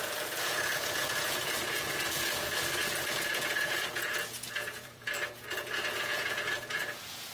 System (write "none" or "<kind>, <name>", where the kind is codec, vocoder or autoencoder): vocoder, Vocos